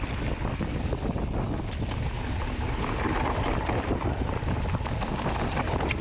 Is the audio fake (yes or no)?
no